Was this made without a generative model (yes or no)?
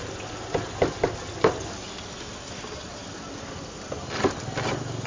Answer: yes